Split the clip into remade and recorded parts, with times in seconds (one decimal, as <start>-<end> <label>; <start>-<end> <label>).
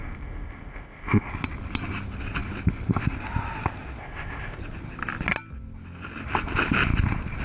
0.0-1.3 remade; 1.3-4.0 recorded; 4.0-4.6 remade; 4.6-7.4 recorded